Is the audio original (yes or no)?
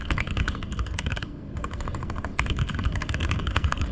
no